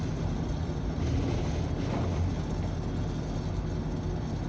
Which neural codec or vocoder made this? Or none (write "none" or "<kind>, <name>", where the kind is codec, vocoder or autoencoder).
none